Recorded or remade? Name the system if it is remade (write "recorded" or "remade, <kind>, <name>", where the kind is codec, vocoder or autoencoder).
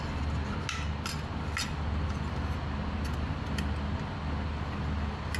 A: recorded